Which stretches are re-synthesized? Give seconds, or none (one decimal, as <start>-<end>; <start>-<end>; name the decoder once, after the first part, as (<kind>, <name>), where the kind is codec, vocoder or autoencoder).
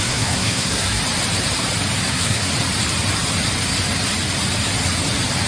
0.0-1.0 (codec, SNAC); 2.1-2.5